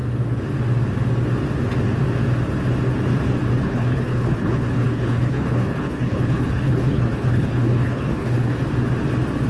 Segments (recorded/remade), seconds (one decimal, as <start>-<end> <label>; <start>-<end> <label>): 0.0-3.6 recorded; 3.6-8.6 remade; 8.6-9.5 recorded